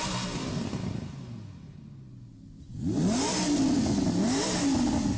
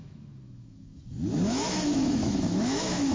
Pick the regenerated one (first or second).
second